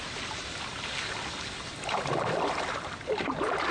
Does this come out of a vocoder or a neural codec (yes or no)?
no